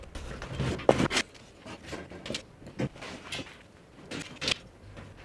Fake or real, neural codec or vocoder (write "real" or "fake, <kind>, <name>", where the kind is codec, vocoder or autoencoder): real